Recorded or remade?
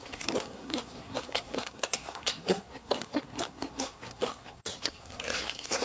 remade